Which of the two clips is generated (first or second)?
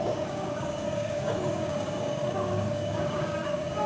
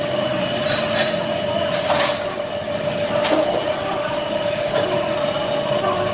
first